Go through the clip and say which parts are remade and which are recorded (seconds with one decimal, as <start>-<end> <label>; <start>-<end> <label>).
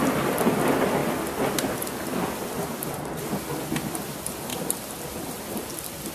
0.0-4.5 recorded; 4.5-6.1 remade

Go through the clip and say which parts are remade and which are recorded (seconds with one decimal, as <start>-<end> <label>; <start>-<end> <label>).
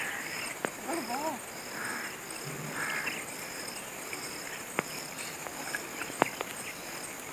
0.0-0.6 remade; 0.6-4.9 recorded; 4.9-7.3 remade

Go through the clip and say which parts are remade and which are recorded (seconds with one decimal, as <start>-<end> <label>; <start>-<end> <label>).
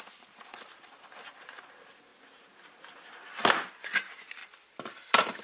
0.0-2.1 remade; 2.1-3.5 recorded; 3.5-5.4 remade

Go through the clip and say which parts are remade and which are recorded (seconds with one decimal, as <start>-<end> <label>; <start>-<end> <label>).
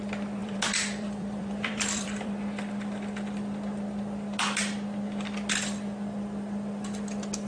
0.0-0.4 recorded; 0.4-2.4 remade; 2.4-7.5 recorded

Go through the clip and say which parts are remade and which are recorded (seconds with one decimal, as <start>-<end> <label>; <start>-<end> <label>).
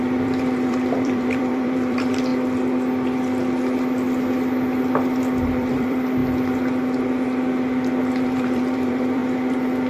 0.0-2.3 remade; 2.3-5.2 recorded; 5.2-6.2 remade; 6.2-8.2 recorded; 8.2-9.2 remade; 9.2-9.9 recorded